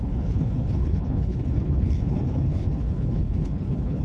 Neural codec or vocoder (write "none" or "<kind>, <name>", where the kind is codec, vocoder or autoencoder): codec, HILCodec